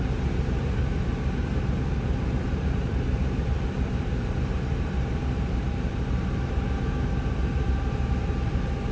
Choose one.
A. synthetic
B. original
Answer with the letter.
A